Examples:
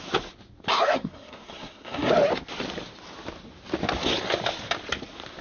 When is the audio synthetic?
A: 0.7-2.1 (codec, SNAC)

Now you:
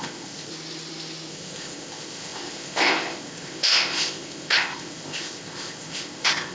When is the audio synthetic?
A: 0.0-0.5 (codec, ZipCodec); 1.3-6.5

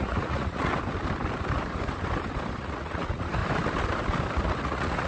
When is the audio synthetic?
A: 0.0-0.7 (vocoder, Vocos); 2.6-3.4; 4.6-5.1

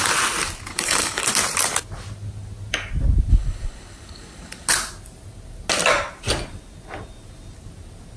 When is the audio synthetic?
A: 0.7-1.3 (codec, HILCodec); 3.3-4.7

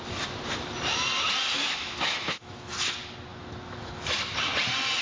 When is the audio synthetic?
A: 1.5-2.7 (autoencoder, DAC-VAE); 3.3-3.9